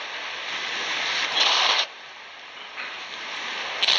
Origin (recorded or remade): recorded